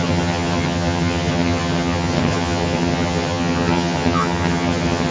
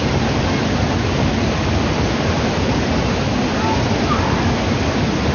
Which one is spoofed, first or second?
first